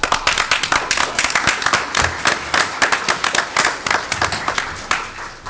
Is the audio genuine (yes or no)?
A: yes